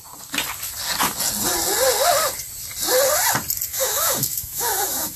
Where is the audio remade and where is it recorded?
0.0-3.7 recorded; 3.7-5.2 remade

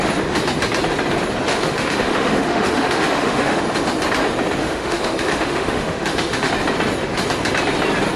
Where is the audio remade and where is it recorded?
0.0-1.5 recorded; 1.5-3.6 remade; 3.6-4.6 recorded; 4.6-6.5 remade; 6.5-8.2 recorded